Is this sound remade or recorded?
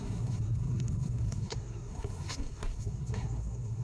remade